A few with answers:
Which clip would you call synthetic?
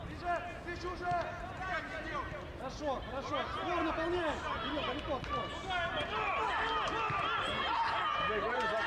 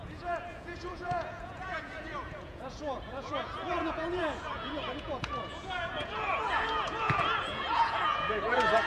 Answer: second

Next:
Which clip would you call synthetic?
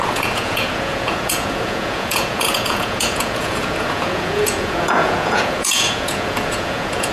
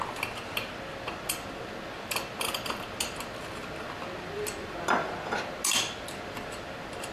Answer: first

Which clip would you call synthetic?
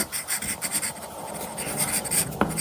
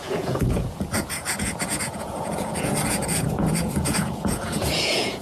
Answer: second